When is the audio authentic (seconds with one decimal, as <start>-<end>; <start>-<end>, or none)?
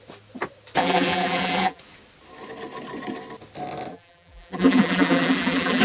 0.0-0.8; 1.8-3.9